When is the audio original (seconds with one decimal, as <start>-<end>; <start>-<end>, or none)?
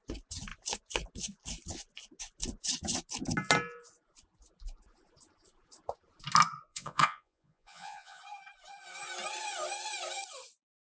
0.0-6.7; 8.2-11.0